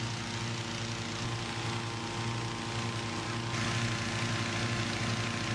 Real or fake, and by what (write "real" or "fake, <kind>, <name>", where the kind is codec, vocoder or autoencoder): real